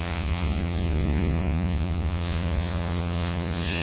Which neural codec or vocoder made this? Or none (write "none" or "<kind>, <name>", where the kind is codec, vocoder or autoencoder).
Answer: vocoder, Vocos